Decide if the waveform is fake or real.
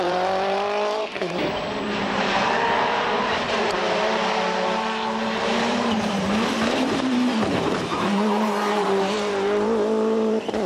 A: fake